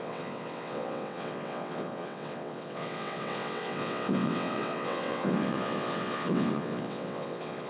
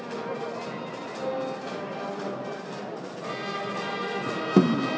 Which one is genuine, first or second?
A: second